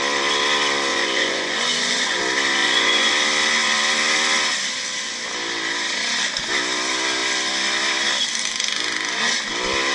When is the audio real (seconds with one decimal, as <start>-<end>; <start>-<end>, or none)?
0.0-0.9; 2.2-2.6; 3.1-9.9

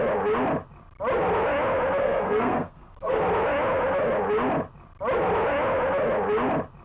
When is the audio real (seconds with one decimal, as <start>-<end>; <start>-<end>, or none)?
0.0-2.0; 3.2-6.8

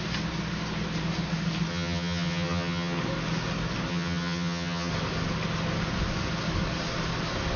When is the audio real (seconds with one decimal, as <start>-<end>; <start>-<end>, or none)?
0.0-1.7; 3.0-3.9; 4.9-7.6